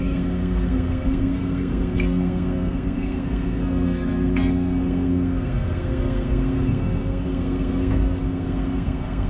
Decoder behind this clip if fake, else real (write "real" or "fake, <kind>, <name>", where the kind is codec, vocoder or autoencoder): fake, codec, SNAC